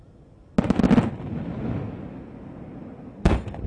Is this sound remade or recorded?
recorded